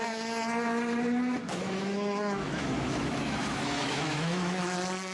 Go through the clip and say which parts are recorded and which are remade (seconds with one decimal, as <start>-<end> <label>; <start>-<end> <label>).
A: 0.0-1.5 recorded; 1.5-4.6 remade; 4.6-5.1 recorded